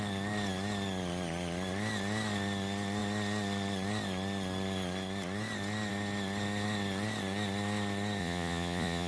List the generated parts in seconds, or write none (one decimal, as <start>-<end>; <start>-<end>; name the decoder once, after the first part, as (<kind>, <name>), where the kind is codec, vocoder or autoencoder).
8.2-9.1 (vocoder, Vocos)